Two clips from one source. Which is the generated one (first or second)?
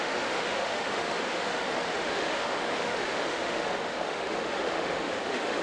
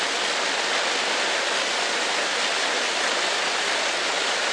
first